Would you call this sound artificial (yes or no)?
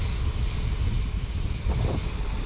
no